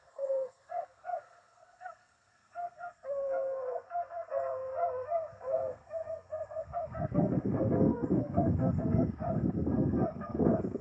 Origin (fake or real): fake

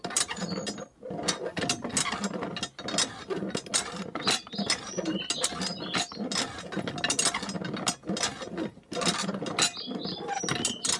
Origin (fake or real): real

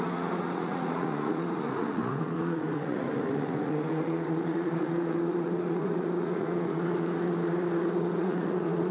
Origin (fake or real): fake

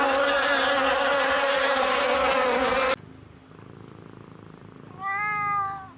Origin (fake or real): real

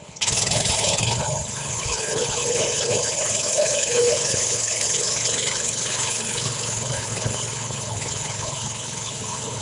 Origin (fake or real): fake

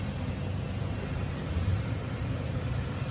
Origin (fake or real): fake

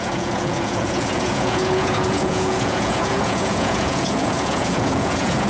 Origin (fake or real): fake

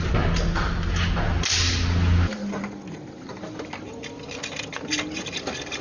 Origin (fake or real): real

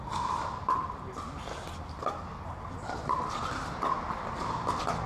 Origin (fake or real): real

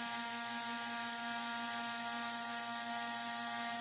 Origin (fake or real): real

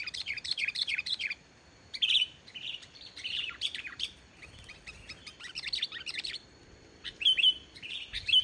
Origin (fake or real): fake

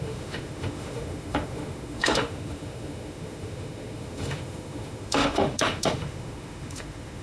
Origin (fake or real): fake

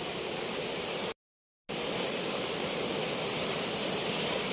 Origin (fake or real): real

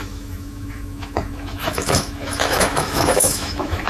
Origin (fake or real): fake